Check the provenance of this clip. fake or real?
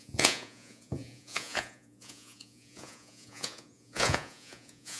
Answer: fake